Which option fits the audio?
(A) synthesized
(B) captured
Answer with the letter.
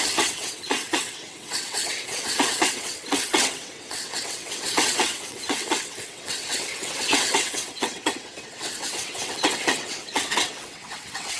A